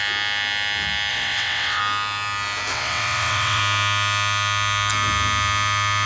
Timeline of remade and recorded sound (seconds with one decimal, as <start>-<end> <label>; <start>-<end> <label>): 0.0-1.1 recorded; 1.1-1.8 remade; 1.8-2.7 recorded; 2.7-3.6 remade; 3.6-6.1 recorded